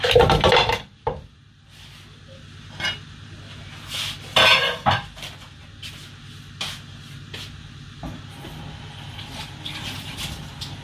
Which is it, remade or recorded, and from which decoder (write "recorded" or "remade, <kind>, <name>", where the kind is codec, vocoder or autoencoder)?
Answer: recorded